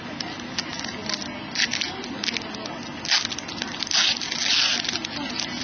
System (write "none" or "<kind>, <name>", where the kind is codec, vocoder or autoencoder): none